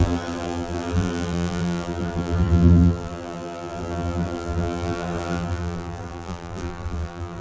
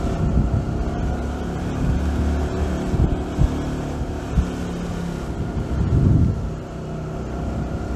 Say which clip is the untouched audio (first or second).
second